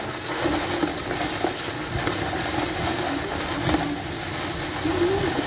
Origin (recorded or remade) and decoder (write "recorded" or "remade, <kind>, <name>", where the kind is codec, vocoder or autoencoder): recorded